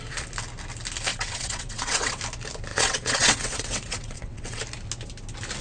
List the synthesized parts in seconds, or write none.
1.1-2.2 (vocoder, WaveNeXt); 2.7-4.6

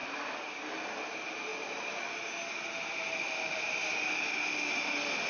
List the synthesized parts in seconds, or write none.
none

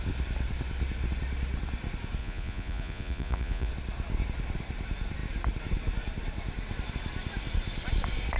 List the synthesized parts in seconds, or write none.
2.2-3.7 (vocoder, Vocos)

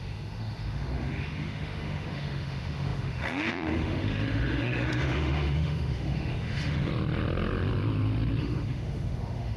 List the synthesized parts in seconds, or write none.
0.0-6.9 (autoencoder, DAC-VAE); 8.4-9.6

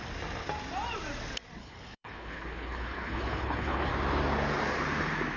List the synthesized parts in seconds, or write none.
1.6-3.9 (codec, HILCodec)

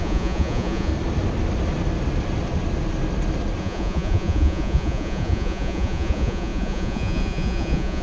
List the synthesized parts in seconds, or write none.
0.0-0.9 (vocoder, Vocos); 3.6-8.0

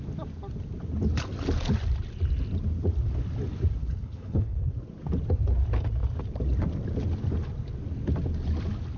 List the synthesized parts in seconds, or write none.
3.8-4.7 (codec, HILCodec)